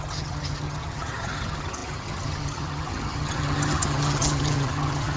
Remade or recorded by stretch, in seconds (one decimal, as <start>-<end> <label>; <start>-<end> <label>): 0.0-5.2 remade

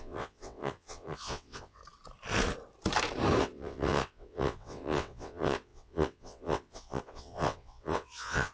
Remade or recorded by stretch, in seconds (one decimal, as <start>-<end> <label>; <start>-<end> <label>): 0.0-1.8 remade; 1.8-3.4 recorded; 3.4-8.5 remade

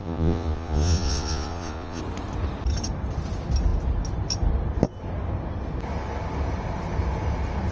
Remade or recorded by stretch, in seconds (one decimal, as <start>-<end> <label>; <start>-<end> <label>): 0.0-2.0 remade; 2.0-7.7 recorded

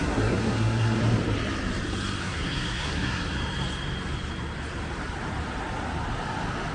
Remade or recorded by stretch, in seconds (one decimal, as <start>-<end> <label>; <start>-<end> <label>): 0.0-1.0 remade; 1.0-2.2 recorded; 2.2-3.3 remade; 3.3-6.7 recorded

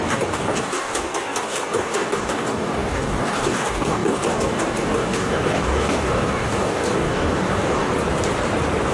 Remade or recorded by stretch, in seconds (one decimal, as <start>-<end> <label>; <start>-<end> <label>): 0.0-7.9 remade; 7.9-8.9 recorded

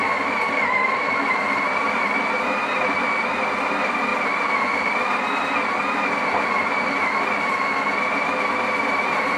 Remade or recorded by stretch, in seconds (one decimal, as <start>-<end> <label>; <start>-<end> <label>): 0.0-9.4 recorded

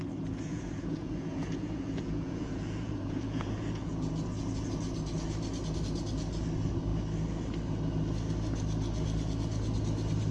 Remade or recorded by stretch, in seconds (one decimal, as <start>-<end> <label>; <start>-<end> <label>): 0.0-0.5 recorded; 0.5-4.1 remade; 4.1-10.3 recorded

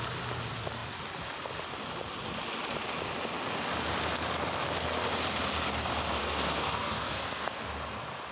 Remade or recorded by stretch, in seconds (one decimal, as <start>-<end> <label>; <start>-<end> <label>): 0.0-6.2 recorded; 6.2-7.6 remade; 7.6-8.3 recorded